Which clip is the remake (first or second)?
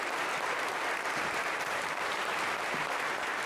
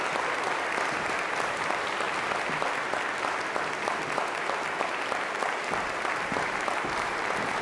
first